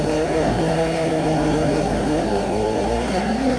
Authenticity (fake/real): fake